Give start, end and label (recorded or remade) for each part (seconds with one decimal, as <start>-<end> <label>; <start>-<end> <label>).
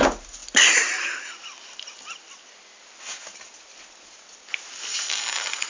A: 0.0-4.9 recorded; 4.9-5.7 remade